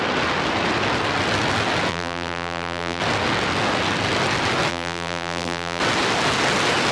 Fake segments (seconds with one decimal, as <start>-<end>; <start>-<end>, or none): 1.9-3.0; 4.7-5.8